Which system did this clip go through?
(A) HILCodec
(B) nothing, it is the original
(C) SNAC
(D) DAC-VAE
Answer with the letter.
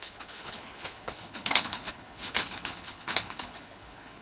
A